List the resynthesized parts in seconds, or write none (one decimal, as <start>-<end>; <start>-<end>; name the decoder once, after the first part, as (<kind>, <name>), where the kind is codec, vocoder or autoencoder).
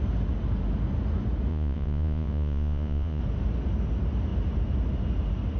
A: 1.5-3.2 (vocoder, Vocos)